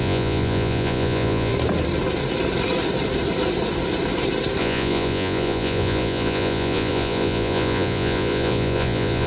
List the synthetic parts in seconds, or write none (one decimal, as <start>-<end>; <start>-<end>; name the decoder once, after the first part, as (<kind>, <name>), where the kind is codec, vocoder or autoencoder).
0.0-1.5 (vocoder, Vocos); 4.6-9.3